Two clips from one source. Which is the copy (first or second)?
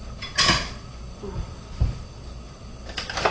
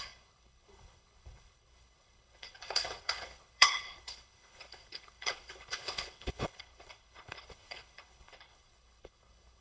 second